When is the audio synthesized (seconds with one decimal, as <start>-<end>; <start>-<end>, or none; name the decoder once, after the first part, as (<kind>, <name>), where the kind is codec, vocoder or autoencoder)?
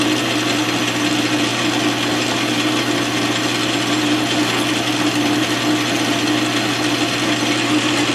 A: none